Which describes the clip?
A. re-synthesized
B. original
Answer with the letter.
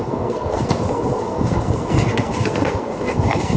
A